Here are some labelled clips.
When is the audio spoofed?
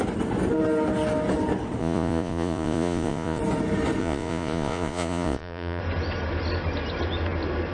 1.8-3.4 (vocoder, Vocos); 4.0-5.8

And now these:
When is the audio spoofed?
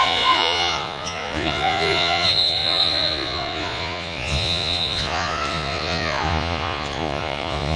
0.0-7.8 (vocoder, Vocos)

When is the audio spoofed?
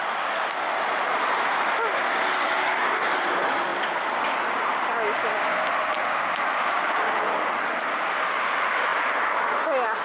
none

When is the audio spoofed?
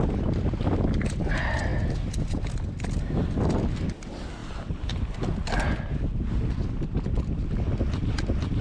none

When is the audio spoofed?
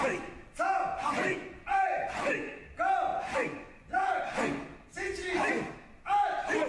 1.0-2.6 (vocoder, Vocos); 3.1-4.2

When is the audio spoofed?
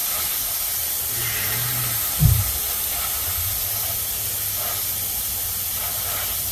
none